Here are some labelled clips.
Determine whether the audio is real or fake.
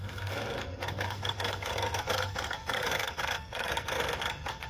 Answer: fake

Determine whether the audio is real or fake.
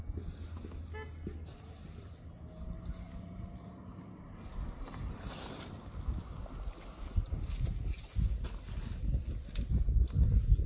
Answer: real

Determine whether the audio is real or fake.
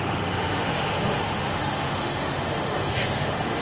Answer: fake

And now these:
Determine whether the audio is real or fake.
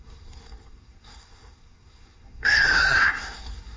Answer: fake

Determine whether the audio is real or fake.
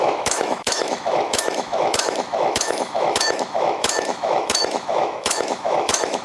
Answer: fake